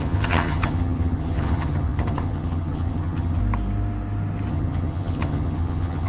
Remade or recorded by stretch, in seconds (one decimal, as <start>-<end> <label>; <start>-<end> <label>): 0.0-3.4 remade; 3.4-4.5 recorded; 4.5-6.1 remade